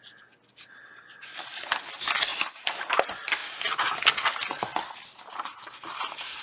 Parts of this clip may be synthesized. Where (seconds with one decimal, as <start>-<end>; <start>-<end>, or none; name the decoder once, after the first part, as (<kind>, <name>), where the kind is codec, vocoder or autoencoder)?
none